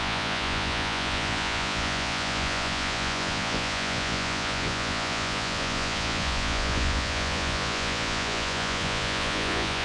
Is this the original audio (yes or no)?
no